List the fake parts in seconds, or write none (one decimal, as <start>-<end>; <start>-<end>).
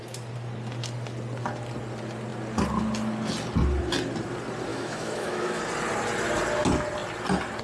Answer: 4.7-5.6